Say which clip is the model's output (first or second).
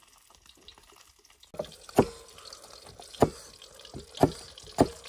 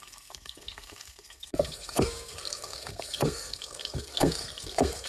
second